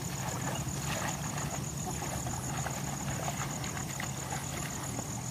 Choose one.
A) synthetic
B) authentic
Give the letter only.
B